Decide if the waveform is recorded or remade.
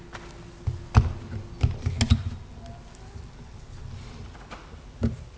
recorded